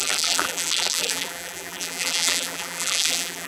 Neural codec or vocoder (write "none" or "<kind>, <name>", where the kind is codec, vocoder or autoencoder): vocoder, BigVGAN v2